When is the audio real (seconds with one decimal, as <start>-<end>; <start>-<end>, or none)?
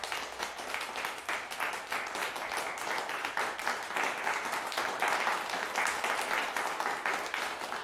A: 0.0-7.8